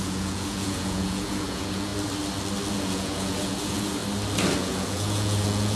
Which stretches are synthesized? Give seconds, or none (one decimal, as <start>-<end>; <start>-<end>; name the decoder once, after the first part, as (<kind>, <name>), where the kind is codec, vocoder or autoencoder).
0.0-1.9 (vocoder, Vocos); 2.7-4.0; 4.6-5.8